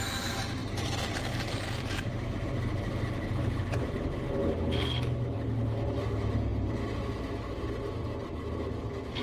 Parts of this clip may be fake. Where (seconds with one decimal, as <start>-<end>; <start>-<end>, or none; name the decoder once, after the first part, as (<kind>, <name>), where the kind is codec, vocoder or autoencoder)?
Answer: 0.6-5.4 (vocoder, BigVGAN v2)